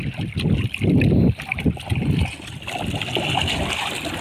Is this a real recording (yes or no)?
yes